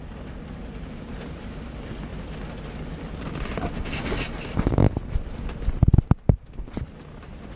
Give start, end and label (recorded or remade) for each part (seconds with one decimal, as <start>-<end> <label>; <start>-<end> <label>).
0.0-2.1 remade; 2.1-3.0 recorded; 3.0-4.8 remade; 4.8-6.8 recorded; 6.8-7.6 remade